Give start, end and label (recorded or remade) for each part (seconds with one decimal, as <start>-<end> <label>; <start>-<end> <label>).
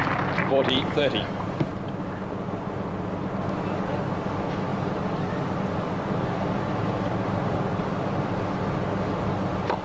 0.0-0.4 recorded; 0.4-1.0 remade; 1.0-4.7 recorded; 4.7-8.4 remade; 8.4-9.8 recorded